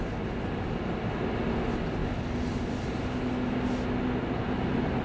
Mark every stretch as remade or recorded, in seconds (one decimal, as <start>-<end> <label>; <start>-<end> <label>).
0.0-5.0 recorded

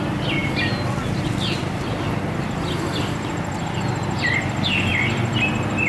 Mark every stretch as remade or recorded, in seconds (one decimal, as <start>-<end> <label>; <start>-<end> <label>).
0.0-5.9 recorded

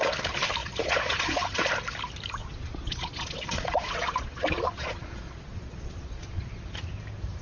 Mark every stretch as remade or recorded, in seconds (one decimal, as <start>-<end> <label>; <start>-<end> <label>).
0.0-0.6 recorded; 0.6-1.7 remade; 1.7-2.4 recorded; 2.4-6.8 remade; 6.8-7.4 recorded

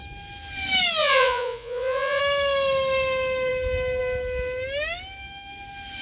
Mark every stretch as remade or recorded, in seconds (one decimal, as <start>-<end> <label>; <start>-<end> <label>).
0.0-1.0 recorded; 1.0-2.2 remade; 2.2-6.0 recorded